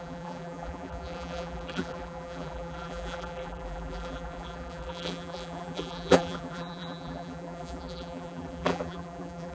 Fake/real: fake